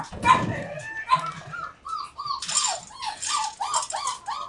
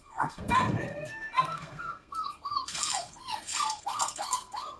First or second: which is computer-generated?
second